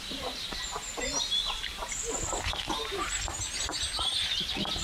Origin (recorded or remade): recorded